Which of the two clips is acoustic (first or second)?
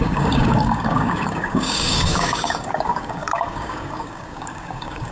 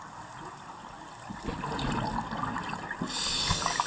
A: second